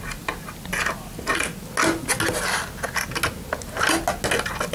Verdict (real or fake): real